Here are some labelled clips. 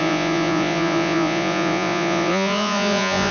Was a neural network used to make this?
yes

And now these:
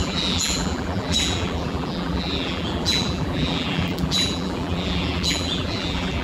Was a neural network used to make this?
yes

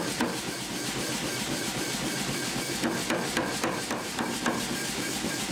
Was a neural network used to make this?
yes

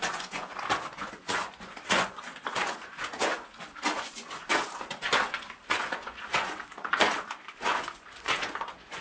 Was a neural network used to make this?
yes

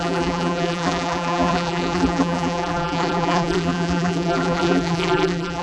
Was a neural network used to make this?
yes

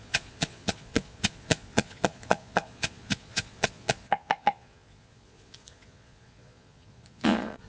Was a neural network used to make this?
yes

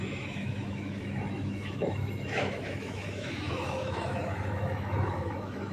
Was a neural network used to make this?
yes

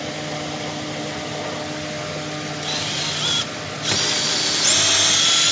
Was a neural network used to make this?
no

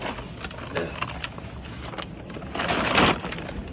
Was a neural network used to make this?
no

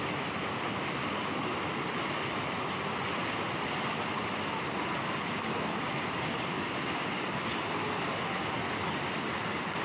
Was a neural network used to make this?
no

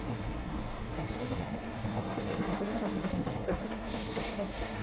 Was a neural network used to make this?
yes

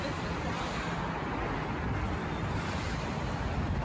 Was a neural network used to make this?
no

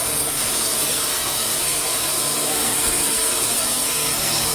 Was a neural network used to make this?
yes